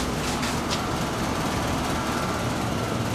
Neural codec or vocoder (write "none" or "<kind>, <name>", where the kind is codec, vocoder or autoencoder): vocoder, BigVGAN v2